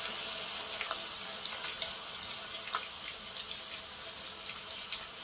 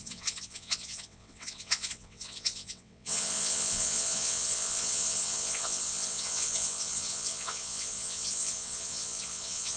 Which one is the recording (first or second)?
first